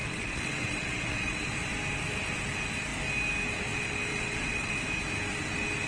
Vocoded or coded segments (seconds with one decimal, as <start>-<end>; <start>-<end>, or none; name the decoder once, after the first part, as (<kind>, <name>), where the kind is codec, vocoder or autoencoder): 0.0-1.5 (vocoder, WaveNeXt); 4.1-4.7